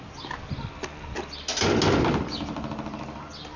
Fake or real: real